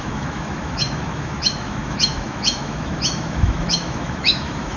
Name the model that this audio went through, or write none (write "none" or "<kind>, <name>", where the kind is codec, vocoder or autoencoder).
autoencoder, DAC-VAE